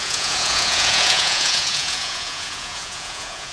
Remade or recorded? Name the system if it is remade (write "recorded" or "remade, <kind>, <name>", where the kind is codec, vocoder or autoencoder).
remade, vocoder, Vocos